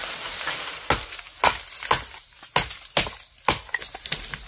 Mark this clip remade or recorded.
recorded